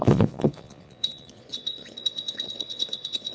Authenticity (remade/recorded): remade